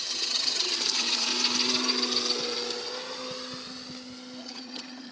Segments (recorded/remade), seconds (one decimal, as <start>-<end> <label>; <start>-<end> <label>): 0.0-1.3 remade; 1.3-4.4 recorded; 4.4-5.1 remade